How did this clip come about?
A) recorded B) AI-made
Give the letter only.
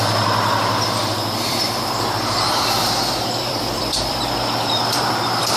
B